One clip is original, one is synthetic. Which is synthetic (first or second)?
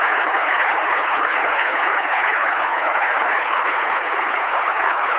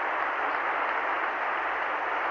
first